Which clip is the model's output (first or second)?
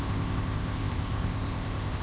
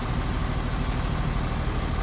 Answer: first